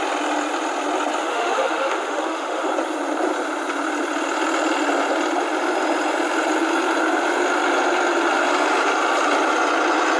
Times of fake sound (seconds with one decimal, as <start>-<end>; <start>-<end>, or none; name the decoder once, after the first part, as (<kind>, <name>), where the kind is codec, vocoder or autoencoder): 1.2-2.7 (autoencoder, DAC-VAE)